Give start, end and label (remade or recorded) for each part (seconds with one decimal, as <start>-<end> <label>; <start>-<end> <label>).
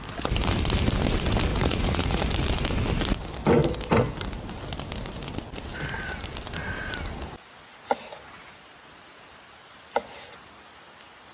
0.0-1.5 recorded; 1.5-2.2 remade; 2.2-11.3 recorded